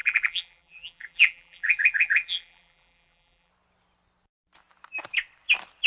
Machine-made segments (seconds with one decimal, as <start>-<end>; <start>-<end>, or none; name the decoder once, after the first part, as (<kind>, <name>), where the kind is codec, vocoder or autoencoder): 0.0-3.5 (vocoder, BigVGAN v2)